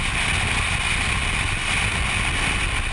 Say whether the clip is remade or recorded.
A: recorded